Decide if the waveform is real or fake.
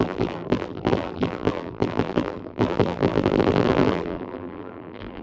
fake